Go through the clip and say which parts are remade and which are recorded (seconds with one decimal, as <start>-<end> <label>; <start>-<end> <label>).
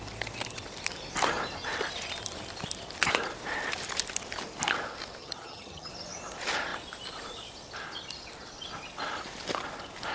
0.0-5.2 recorded; 5.2-5.9 remade; 5.9-10.1 recorded